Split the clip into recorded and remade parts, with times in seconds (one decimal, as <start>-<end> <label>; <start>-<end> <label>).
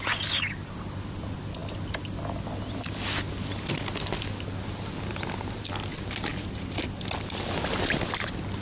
0.0-8.6 recorded